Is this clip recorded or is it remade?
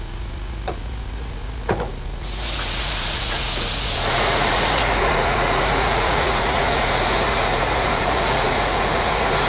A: remade